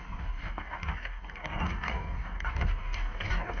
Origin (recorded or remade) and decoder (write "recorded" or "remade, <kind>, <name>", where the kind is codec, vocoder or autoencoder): remade, codec, DAC